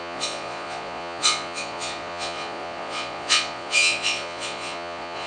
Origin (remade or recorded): remade